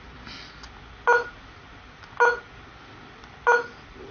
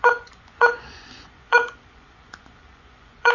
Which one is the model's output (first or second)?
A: second